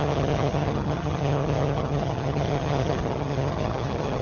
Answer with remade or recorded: remade